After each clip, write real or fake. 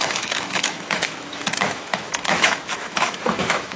fake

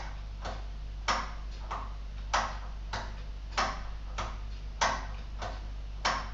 real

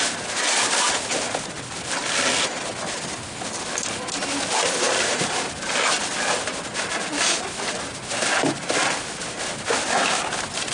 real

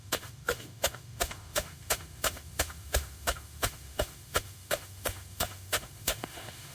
fake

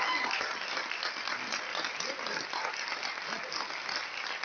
real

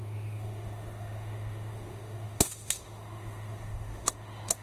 fake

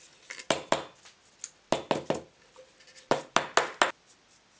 real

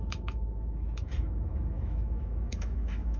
fake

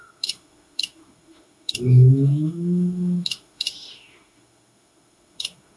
fake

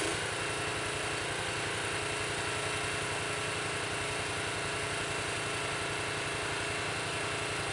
real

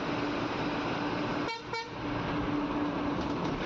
real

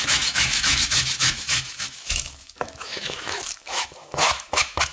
fake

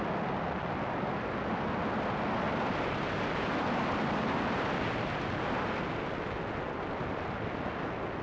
real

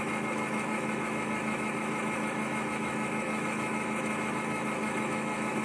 fake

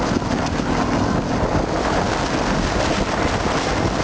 real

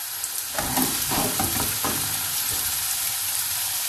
real